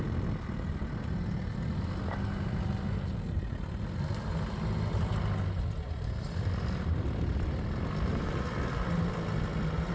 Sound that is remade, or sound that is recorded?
recorded